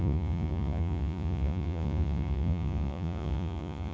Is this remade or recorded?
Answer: remade